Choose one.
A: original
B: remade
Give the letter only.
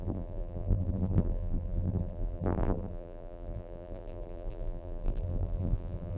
B